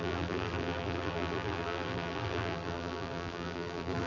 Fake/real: fake